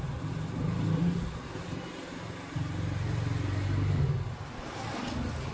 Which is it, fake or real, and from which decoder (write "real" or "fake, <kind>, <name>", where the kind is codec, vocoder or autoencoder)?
real